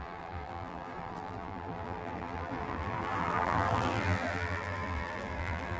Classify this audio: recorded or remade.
remade